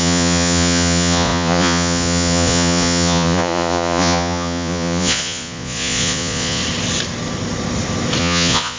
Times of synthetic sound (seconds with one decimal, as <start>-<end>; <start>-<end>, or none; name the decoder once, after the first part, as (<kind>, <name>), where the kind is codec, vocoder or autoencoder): 0.0-6.6 (vocoder, Vocos); 8.2-8.8